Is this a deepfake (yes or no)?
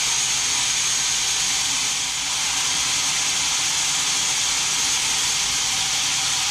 no